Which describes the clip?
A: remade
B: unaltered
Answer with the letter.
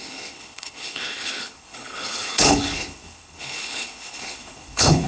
A